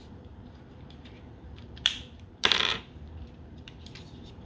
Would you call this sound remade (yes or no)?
yes